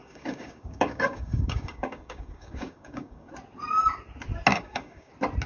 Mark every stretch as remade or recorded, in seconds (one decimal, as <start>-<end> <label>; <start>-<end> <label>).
0.0-3.3 remade; 3.3-4.5 recorded; 4.5-5.1 remade; 5.1-5.5 recorded